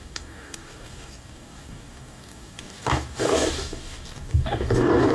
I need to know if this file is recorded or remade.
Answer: remade